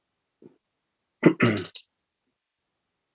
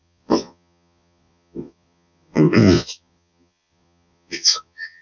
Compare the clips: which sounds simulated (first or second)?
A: second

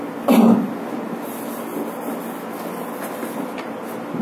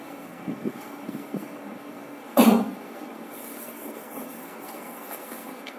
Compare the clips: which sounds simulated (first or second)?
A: second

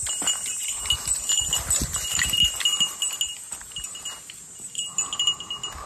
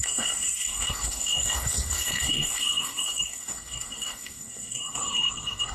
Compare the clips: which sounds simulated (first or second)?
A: second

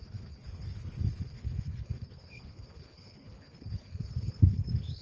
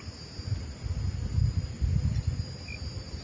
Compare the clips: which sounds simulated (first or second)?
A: first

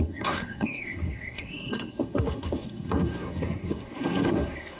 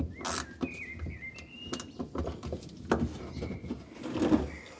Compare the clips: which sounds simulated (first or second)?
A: first